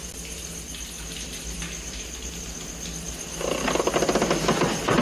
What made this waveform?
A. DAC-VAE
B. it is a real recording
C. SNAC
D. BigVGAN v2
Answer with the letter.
B